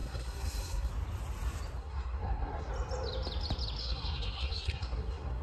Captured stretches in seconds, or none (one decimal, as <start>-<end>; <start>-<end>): 0.9-1.8; 2.7-3.8